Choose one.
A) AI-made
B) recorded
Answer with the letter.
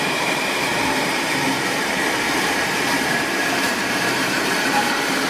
A